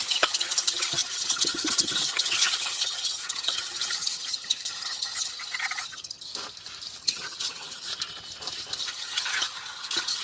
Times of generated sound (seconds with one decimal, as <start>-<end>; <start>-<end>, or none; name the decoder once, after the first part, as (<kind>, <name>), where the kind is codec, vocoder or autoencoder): 0.0-6.3 (vocoder, HiFi-GAN); 7.0-7.9; 8.9-10.2